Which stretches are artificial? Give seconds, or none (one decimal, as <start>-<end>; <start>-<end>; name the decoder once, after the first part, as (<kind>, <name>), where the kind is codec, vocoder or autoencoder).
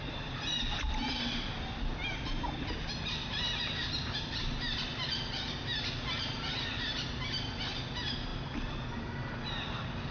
none